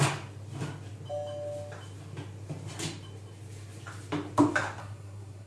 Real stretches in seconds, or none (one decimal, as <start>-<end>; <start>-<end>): 0.0-4.8